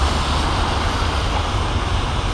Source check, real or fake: real